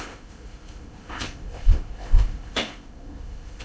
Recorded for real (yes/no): no